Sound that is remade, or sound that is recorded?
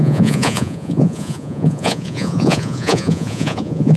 remade